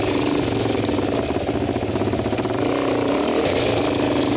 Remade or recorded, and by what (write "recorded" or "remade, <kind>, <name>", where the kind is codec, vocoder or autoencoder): recorded